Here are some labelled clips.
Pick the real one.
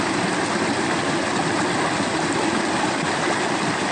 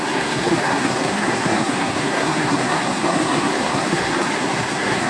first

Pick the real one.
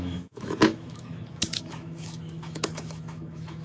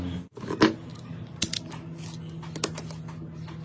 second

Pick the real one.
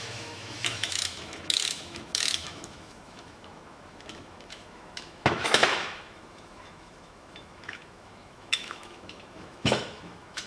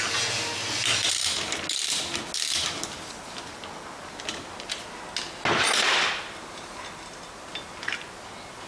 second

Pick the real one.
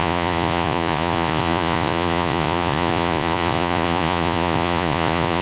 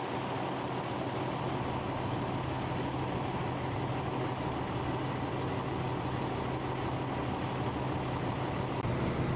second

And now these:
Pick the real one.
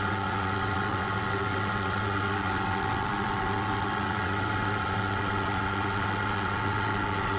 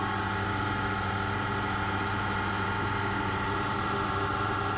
second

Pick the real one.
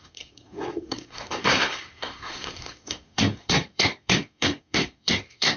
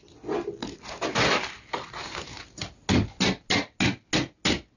second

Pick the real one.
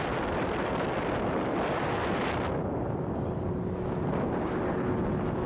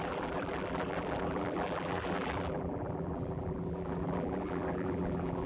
first